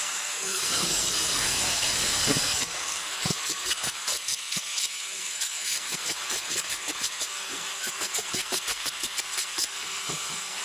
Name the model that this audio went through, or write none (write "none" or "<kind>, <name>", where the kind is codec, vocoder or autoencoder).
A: codec, SNAC